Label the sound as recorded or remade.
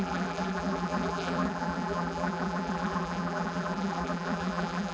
remade